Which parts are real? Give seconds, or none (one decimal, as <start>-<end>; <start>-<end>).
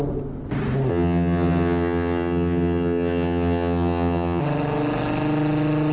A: 0.0-0.9; 4.4-5.9